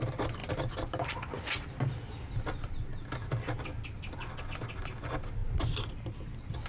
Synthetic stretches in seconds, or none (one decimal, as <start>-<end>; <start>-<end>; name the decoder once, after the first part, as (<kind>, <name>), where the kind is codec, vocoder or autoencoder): none